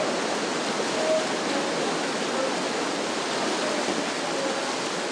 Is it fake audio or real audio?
real